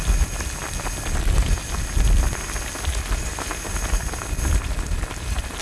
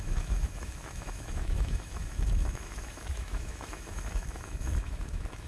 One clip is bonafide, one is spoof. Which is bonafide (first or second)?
first